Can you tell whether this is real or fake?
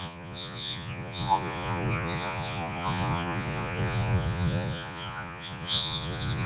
fake